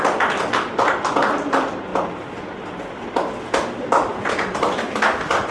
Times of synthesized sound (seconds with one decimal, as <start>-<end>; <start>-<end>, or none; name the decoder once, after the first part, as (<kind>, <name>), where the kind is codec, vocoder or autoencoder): 4.1-5.0 (vocoder, BigVGAN v2)